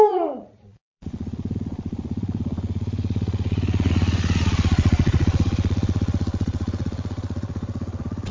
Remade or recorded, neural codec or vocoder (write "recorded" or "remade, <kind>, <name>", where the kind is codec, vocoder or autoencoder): remade, vocoder, Vocos